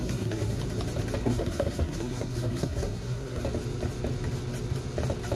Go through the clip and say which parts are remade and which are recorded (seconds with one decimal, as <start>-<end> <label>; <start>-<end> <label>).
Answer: 0.0-0.6 remade; 0.6-1.2 recorded; 1.2-3.4 remade; 3.4-5.4 recorded